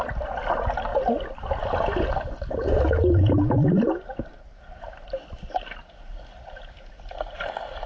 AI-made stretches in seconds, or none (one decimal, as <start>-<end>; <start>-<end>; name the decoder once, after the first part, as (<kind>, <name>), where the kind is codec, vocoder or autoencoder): none